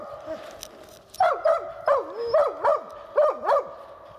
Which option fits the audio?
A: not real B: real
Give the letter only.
B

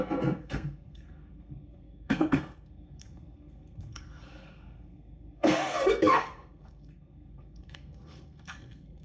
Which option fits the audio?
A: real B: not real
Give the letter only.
B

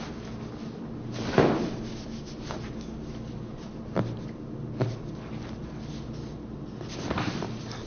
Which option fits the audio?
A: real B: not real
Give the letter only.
A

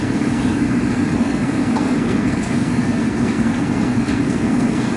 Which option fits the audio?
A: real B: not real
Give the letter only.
B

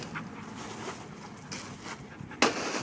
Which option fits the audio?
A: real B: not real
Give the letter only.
A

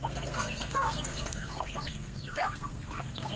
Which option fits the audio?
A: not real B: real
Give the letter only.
A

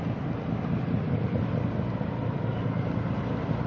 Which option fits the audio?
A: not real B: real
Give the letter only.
B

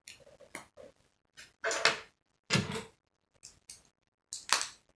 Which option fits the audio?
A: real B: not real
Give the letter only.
A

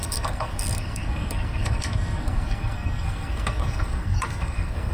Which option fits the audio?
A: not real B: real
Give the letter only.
A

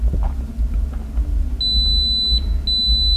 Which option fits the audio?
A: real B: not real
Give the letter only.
A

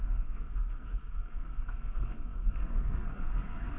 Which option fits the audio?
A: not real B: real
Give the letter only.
A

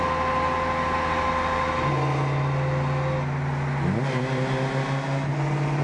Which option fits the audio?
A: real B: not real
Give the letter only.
A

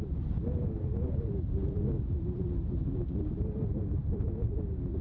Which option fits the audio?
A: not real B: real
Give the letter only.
B